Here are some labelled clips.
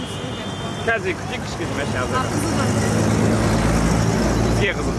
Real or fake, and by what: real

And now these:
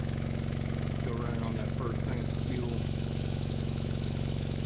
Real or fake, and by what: fake, autoencoder, DAC-VAE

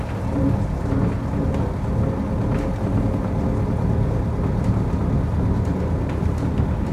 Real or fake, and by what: real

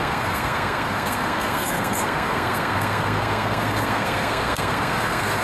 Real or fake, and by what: fake, codec, SNAC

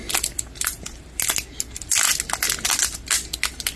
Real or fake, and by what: real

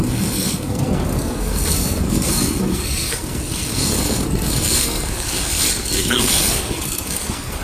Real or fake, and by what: fake, codec, SNAC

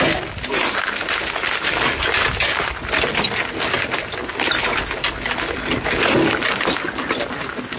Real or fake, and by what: real